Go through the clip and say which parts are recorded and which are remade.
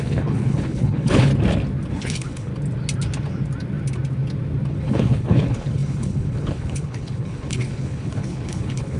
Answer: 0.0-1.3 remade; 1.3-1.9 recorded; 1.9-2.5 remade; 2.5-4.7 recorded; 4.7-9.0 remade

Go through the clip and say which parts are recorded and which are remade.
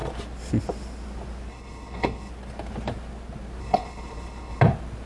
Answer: 0.0-1.5 recorded; 1.5-2.3 remade; 2.3-3.6 recorded; 3.6-4.6 remade; 4.6-5.1 recorded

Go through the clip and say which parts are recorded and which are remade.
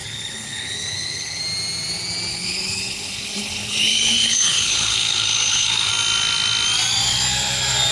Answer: 0.0-1.4 remade; 1.4-2.3 recorded; 2.3-5.9 remade; 5.9-7.9 recorded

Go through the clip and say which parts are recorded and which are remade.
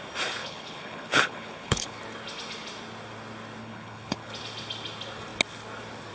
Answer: 0.0-0.4 recorded; 0.4-2.0 remade; 2.0-3.6 recorded; 3.6-4.3 remade; 4.3-6.1 recorded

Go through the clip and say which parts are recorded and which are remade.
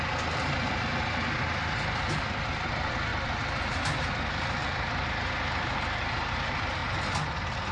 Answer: 0.0-7.7 recorded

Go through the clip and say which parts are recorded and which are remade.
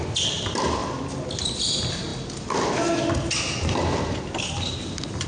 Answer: 0.0-5.3 recorded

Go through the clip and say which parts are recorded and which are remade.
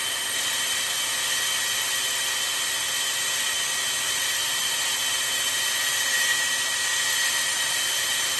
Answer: 0.0-8.4 recorded